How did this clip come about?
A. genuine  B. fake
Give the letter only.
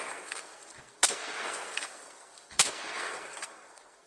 B